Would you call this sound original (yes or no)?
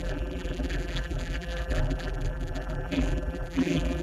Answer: no